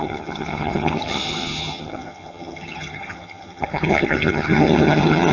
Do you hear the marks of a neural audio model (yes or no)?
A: yes